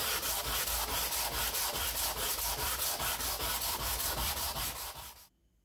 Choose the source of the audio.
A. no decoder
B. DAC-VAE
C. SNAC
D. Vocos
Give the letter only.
A